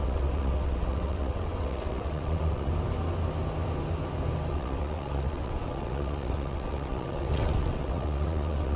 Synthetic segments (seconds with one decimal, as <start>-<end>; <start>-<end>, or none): 0.0-2.7; 4.5-8.8